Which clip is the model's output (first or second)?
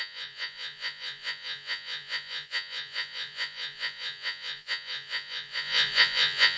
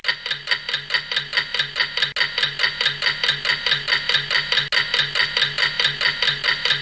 first